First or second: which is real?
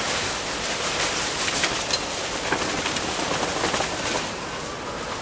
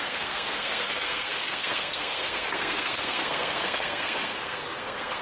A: first